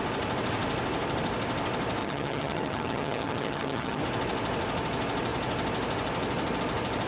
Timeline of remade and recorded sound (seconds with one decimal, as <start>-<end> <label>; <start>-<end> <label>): 0.0-2.0 recorded; 2.0-4.0 remade; 4.0-7.1 recorded